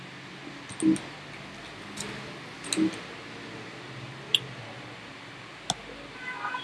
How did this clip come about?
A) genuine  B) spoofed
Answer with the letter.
A